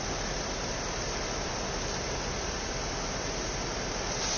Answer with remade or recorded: recorded